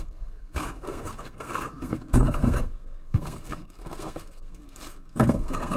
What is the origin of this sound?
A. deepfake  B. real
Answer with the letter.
A